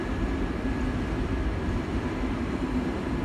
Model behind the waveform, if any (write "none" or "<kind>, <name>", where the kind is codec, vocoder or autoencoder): none